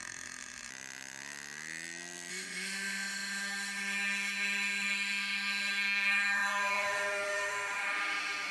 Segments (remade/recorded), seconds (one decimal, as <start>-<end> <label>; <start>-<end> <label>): 0.0-0.7 remade; 0.7-2.3 recorded; 2.3-8.5 remade